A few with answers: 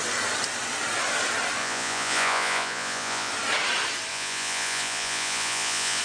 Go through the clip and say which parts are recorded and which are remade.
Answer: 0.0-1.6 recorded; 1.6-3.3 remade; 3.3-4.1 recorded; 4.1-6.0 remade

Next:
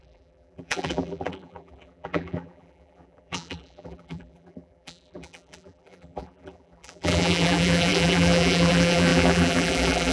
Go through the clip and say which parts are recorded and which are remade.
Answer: 0.0-10.1 remade

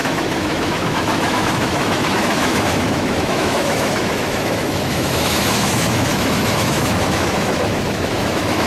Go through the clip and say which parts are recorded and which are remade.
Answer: 0.0-8.7 remade

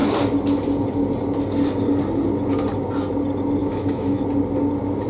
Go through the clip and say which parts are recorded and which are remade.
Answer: 0.0-3.6 recorded; 3.6-4.2 remade; 4.2-5.1 recorded

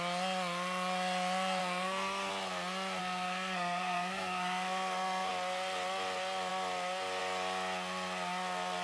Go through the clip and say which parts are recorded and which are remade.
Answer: 0.0-1.6 recorded; 1.6-2.3 remade; 2.3-3.0 recorded; 3.0-5.3 remade; 5.3-8.8 recorded

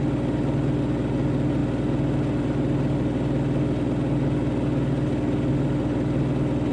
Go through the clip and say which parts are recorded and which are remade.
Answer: 0.0-6.7 recorded

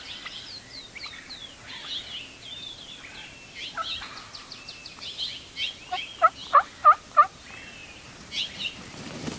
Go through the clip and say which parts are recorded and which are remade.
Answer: 0.0-7.8 recorded; 7.8-9.4 remade

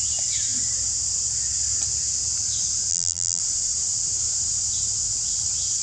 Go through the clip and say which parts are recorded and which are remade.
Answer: 0.0-2.9 recorded; 2.9-3.4 remade; 3.4-5.8 recorded